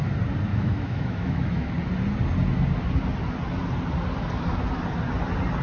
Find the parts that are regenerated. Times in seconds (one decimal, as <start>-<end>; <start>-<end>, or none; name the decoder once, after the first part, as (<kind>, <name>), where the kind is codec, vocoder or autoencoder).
0.5-1.7 (autoencoder, DAC-VAE)